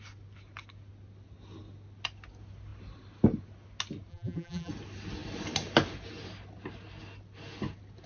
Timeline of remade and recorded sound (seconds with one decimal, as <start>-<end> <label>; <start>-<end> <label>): 0.0-4.1 recorded; 4.1-4.7 remade; 4.7-8.1 recorded